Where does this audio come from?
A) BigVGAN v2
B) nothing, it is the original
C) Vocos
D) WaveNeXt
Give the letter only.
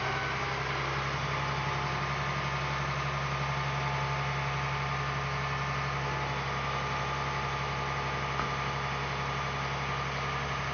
B